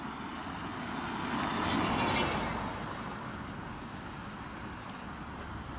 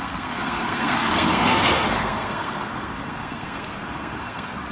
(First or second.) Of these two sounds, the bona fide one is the first